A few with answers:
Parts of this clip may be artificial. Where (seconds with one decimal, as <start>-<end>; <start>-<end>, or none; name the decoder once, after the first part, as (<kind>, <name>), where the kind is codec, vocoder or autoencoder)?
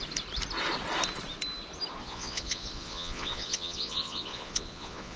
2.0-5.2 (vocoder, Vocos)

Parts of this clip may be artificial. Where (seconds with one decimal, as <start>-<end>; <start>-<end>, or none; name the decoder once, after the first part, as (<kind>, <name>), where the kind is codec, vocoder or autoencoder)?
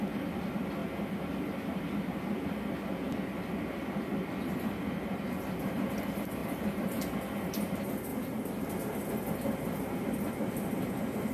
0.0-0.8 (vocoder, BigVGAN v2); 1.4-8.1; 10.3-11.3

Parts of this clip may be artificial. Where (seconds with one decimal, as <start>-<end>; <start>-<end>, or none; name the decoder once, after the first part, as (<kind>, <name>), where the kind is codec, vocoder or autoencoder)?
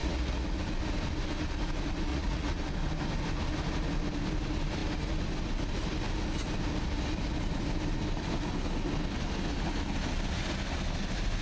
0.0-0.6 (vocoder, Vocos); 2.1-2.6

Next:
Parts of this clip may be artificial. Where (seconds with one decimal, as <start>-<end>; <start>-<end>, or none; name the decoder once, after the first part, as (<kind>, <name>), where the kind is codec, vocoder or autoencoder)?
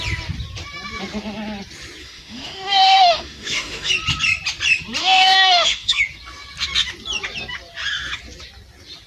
2.0-3.9 (autoencoder, DAC-VAE); 5.0-6.0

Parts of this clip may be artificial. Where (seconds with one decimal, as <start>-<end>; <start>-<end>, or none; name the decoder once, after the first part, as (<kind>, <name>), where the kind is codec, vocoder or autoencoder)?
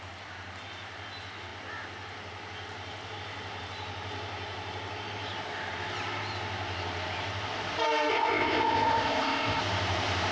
8.1-9.6 (codec, ZipCodec)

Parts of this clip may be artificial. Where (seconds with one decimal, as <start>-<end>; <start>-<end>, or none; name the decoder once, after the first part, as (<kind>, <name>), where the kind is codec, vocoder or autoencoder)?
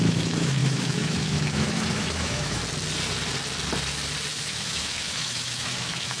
0.0-2.6 (autoencoder, DAC-VAE); 4.3-6.2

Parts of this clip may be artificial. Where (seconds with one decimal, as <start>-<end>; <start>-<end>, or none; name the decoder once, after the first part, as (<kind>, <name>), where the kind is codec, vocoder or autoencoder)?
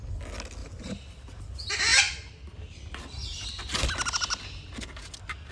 0.6-1.4 (vocoder, BigVGAN v2)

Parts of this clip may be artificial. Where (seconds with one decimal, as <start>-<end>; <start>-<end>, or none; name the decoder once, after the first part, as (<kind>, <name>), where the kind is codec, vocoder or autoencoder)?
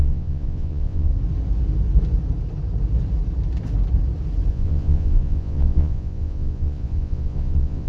0.0-1.1 (vocoder, Vocos); 4.5-7.9